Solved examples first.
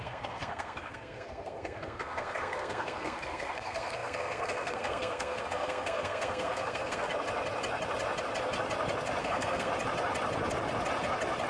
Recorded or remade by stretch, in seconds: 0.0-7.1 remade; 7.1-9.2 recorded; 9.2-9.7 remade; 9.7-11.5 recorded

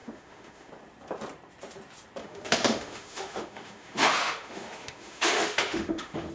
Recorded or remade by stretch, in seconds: 0.0-0.7 remade; 0.7-2.2 recorded; 2.2-6.3 remade

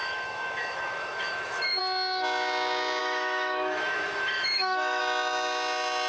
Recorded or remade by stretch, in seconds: 0.0-1.8 remade; 1.8-3.0 recorded; 3.0-5.0 remade; 5.0-6.1 recorded